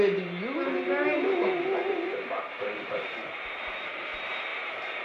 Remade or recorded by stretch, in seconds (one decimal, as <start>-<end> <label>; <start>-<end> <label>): 0.0-1.9 recorded; 1.9-3.9 remade; 3.9-4.5 recorded; 4.5-5.0 remade